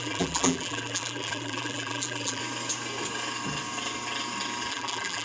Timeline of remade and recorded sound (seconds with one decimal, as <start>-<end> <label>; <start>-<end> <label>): 0.0-2.4 remade; 2.4-4.7 recorded; 4.7-5.2 remade